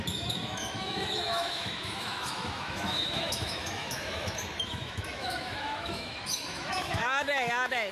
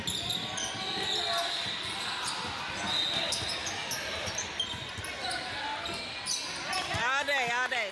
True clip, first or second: second